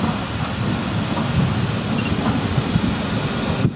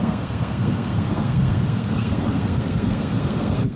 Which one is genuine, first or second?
first